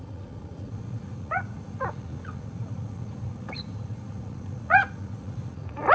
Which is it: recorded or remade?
remade